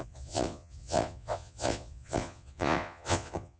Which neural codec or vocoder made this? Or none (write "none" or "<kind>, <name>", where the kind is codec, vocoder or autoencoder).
vocoder, Vocos